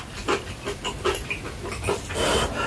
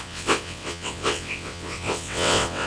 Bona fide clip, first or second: first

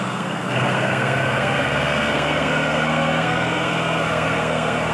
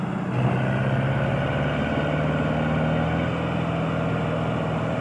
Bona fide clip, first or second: second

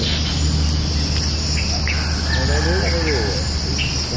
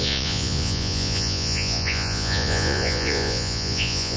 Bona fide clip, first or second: first